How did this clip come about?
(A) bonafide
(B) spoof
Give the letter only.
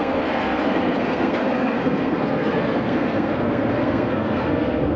B